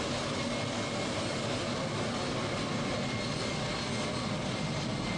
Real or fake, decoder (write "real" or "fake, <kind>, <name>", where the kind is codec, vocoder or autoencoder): real